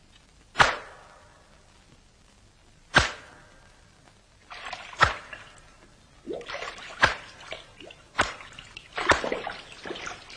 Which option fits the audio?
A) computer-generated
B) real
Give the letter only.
B